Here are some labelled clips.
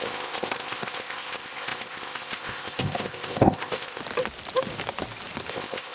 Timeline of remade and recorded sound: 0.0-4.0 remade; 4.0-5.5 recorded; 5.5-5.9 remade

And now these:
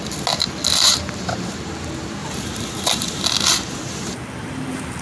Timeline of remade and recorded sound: 0.0-2.2 recorded; 2.2-3.2 remade; 3.2-5.0 recorded

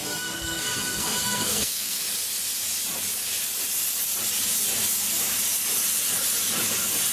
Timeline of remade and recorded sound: 0.0-2.0 remade; 2.0-7.1 recorded